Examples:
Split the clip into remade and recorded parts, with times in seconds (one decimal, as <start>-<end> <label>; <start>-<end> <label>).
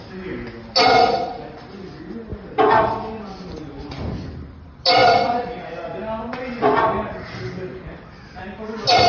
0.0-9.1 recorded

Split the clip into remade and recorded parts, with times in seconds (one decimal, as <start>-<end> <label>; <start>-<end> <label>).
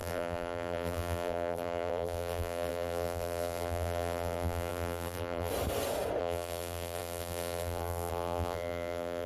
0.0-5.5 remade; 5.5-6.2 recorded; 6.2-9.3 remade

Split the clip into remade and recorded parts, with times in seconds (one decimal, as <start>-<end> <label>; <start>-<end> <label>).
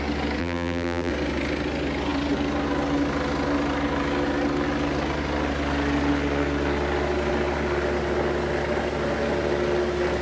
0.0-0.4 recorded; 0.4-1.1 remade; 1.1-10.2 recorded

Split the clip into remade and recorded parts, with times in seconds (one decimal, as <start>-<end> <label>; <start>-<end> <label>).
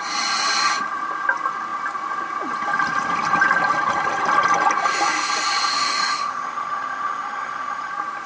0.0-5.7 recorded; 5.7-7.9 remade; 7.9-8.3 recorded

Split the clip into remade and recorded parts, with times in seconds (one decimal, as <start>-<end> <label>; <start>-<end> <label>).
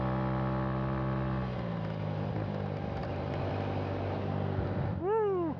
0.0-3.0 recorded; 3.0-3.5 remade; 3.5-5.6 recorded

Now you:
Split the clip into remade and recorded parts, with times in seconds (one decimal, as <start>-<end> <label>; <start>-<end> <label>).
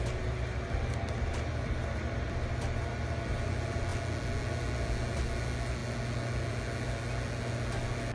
0.0-8.1 recorded